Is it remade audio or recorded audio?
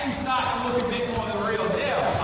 recorded